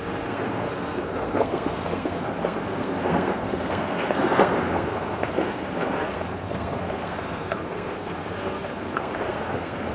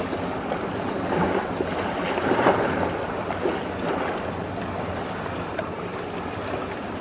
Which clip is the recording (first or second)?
second